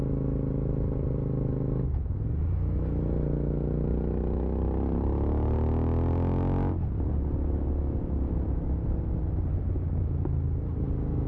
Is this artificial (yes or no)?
no